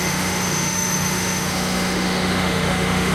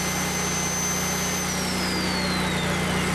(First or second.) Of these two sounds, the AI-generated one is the first